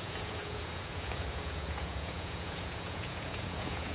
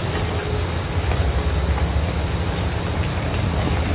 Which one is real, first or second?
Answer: second